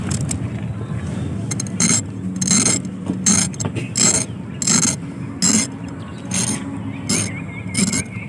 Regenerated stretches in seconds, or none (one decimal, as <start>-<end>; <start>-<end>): none